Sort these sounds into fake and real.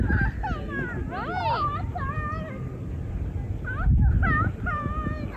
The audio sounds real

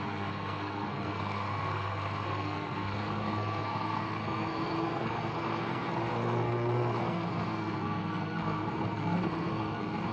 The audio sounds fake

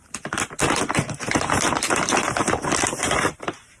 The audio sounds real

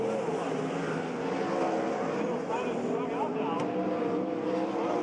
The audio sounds real